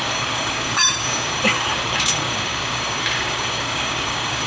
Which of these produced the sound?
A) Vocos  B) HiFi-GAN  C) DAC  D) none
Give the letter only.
C